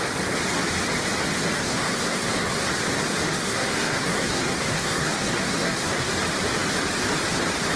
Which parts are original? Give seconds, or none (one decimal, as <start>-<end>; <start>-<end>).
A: 0.0-1.6; 2.7-3.3; 6.1-7.8